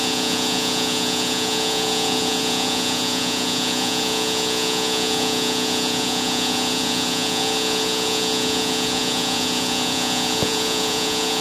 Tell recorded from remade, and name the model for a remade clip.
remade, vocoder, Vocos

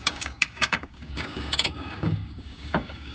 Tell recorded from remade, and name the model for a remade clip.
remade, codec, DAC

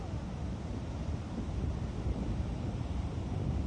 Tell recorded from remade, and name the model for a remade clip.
remade, vocoder, BigVGAN v2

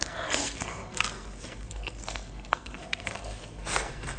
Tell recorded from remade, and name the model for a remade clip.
remade, codec, SNAC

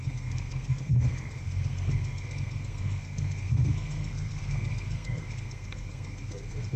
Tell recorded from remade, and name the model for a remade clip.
remade, codec, SNAC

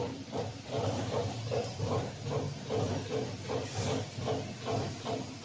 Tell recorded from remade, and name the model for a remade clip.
recorded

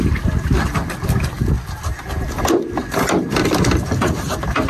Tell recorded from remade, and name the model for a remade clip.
recorded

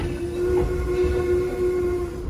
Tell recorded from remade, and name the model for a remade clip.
recorded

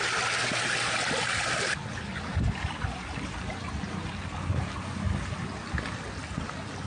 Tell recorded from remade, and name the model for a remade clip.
recorded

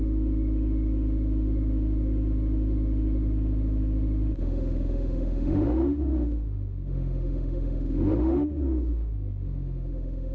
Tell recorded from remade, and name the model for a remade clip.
remade, autoencoder, DAC-VAE